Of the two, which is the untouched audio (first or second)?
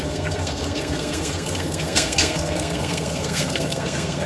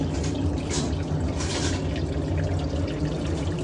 second